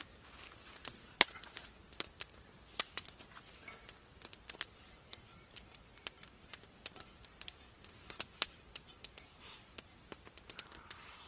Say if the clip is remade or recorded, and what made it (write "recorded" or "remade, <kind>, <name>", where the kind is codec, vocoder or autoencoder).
remade, vocoder, BigVGAN v2